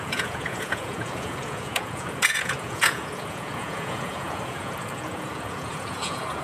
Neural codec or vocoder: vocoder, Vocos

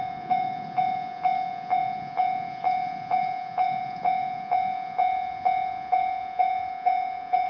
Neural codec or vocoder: vocoder, Vocos